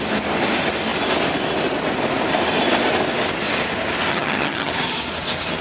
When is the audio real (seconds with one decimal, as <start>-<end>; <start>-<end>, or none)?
0.0-4.1; 4.7-5.6